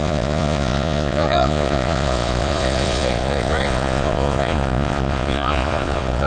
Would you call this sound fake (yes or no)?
yes